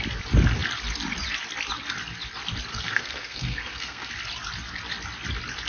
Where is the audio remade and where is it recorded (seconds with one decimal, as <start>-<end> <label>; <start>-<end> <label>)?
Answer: 0.0-2.7 recorded; 2.7-4.1 remade; 4.1-5.7 recorded